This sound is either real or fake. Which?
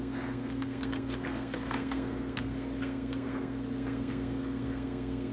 fake